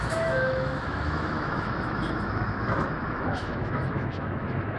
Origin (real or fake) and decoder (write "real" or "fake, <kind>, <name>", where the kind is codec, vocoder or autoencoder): fake, autoencoder, DAC-VAE